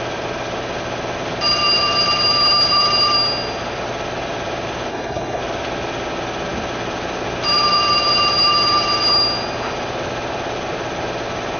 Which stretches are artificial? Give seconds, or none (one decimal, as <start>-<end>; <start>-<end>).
4.9-5.4